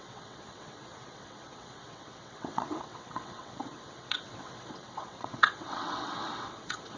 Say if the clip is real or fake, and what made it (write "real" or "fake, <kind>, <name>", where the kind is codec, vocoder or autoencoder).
fake, vocoder, WaveNeXt